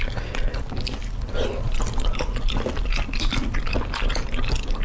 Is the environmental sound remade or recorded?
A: recorded